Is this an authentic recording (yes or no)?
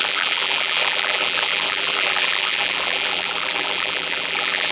no